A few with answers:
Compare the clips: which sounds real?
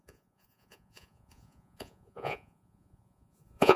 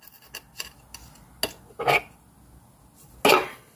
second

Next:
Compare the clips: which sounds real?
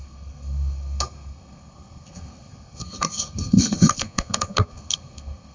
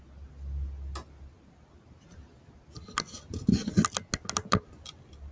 second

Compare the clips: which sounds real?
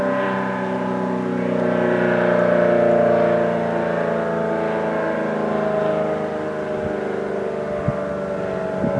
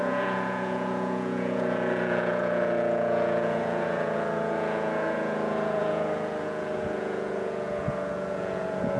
first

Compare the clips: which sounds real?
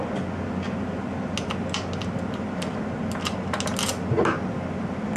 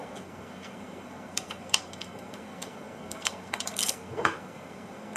first